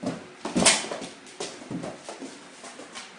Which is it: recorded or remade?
recorded